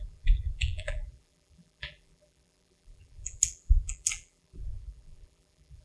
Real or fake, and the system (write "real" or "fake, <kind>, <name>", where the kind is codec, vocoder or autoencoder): fake, vocoder, BigVGAN v2